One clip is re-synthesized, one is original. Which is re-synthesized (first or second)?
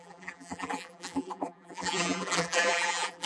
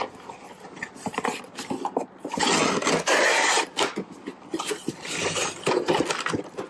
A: first